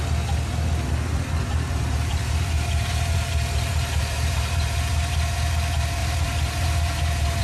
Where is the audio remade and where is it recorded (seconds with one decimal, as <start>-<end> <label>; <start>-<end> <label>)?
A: 0.0-1.1 recorded; 1.1-4.9 remade; 4.9-6.0 recorded; 6.0-7.4 remade